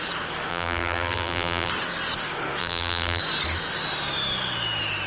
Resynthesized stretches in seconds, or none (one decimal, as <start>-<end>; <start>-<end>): 0.5-1.7; 2.6-3.2